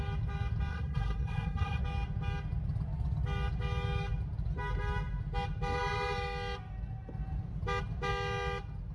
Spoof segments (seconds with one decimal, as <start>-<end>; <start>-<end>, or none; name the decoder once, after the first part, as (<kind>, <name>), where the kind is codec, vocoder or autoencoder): 0.7-1.8 (codec, SNAC)